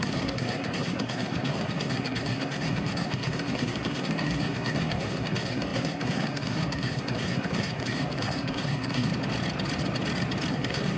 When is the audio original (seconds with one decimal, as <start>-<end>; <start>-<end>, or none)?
9.1-10.5